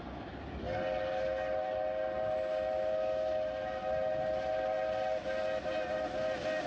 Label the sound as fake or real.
real